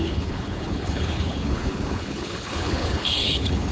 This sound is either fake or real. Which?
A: fake